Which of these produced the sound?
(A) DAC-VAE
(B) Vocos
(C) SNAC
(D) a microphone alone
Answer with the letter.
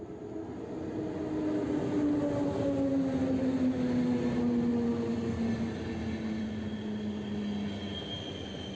D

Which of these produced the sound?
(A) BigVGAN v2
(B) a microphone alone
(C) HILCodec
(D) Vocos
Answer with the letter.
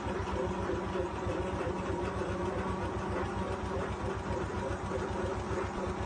B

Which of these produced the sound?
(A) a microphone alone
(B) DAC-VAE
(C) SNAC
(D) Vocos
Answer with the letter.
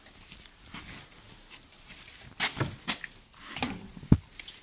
A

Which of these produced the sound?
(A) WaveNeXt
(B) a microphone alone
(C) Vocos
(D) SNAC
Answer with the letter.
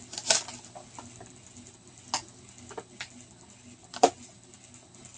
B